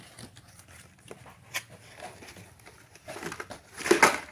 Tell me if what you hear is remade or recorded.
recorded